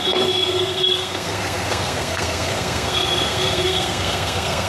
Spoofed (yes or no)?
yes